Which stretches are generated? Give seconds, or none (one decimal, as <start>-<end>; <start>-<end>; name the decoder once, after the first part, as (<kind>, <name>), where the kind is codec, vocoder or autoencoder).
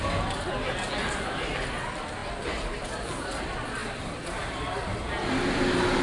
none